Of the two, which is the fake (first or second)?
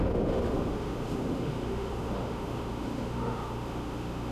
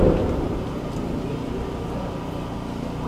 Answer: first